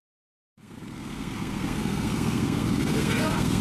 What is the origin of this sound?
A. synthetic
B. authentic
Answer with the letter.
A